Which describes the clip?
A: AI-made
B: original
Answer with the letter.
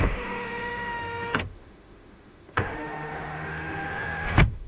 A